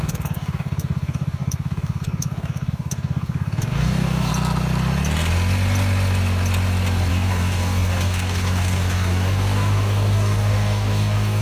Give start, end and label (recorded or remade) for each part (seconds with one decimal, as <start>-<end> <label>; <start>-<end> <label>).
0.0-4.3 remade; 4.3-7.1 recorded; 7.1-11.4 remade